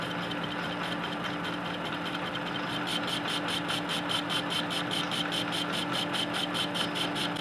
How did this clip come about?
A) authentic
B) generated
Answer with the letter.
A